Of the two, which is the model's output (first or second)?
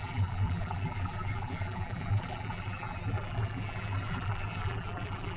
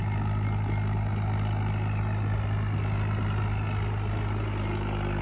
first